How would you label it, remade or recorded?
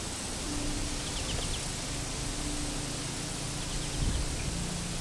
recorded